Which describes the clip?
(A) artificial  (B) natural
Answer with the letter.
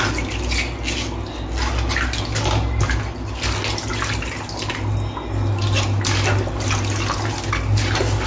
B